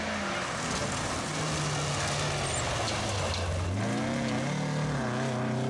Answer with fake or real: real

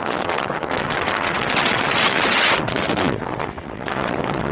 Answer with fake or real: fake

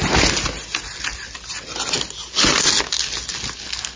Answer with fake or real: real